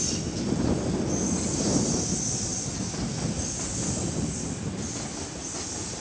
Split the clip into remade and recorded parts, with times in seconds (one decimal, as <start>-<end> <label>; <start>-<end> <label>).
0.0-6.0 recorded